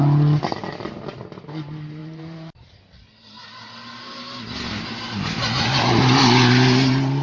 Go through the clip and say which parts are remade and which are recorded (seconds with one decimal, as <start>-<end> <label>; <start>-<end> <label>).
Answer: 0.0-2.0 recorded; 2.0-2.8 remade; 2.8-7.2 recorded